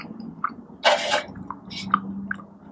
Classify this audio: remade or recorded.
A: recorded